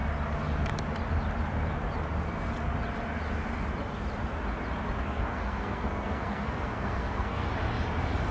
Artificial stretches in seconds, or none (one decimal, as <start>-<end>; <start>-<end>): 5.0-7.5